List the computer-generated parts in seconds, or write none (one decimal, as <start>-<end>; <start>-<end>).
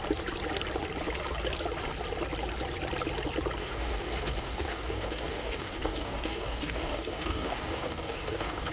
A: 3.6-8.7